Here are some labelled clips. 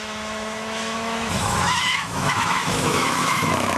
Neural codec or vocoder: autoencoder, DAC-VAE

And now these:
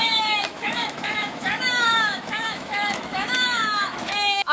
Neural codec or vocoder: autoencoder, DAC-VAE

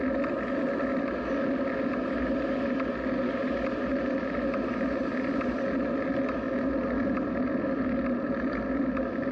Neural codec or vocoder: none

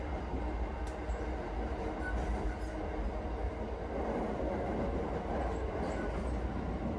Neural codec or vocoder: none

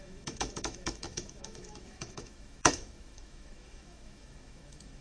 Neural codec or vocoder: autoencoder, DAC-VAE